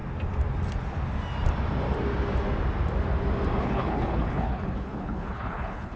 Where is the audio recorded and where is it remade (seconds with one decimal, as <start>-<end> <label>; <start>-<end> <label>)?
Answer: 0.0-3.6 recorded; 3.6-6.0 remade

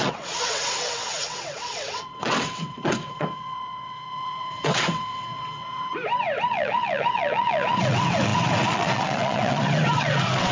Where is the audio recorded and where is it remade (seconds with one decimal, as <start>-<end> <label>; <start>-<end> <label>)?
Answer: 0.0-5.9 remade; 5.9-6.5 recorded; 6.5-10.5 remade

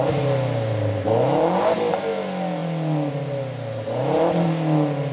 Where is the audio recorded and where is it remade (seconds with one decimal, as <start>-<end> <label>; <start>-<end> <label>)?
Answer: 0.0-5.1 recorded

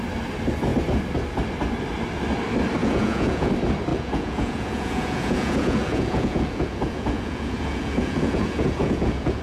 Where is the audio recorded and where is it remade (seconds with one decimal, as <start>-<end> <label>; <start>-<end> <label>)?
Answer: 0.0-2.8 recorded; 2.8-3.5 remade; 3.5-3.9 recorded; 3.9-9.4 remade

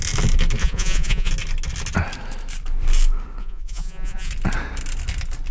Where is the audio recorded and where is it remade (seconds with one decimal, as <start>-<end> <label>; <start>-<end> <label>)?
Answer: 0.0-0.6 recorded; 0.6-1.3 remade; 1.3-3.4 recorded; 3.4-4.3 remade; 4.3-5.5 recorded